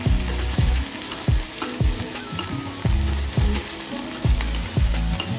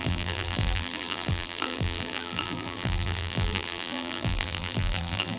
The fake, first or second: second